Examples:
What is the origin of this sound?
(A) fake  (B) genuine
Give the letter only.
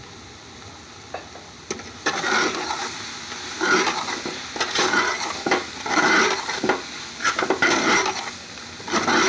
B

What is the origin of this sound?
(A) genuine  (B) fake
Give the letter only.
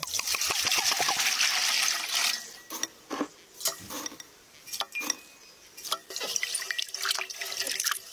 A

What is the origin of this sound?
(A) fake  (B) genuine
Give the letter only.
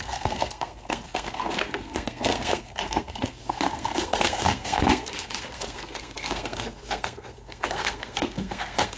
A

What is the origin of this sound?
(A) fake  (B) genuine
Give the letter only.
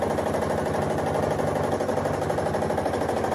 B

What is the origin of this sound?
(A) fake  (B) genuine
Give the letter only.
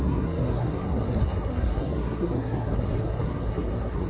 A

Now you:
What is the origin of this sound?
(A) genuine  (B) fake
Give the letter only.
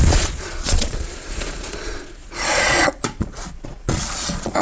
B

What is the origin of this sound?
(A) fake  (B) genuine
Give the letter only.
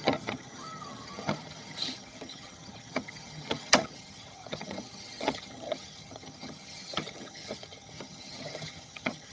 A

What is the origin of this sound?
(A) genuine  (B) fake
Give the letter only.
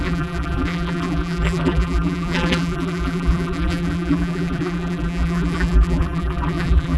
B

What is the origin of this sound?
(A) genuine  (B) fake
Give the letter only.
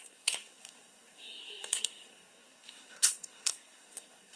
B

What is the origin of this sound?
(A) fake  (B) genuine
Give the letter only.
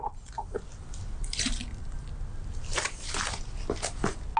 B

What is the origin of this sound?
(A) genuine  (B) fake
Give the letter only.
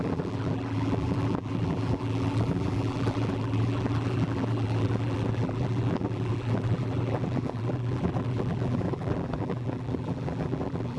B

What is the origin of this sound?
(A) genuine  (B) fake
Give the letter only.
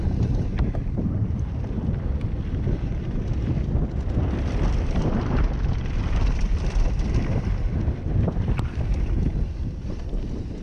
B